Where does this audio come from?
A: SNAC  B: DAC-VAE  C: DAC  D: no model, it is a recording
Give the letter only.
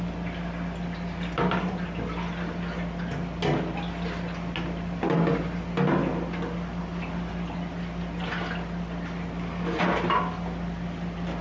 D